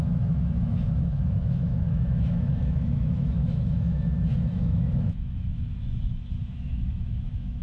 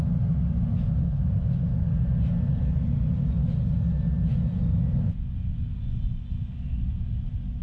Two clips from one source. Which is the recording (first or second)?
second